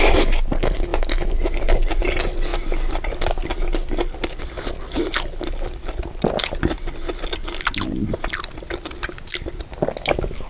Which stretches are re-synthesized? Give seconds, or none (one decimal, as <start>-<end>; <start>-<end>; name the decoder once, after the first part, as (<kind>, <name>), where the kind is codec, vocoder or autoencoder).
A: none